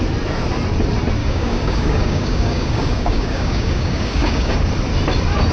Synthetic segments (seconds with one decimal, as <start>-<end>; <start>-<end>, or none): 1.2-4.5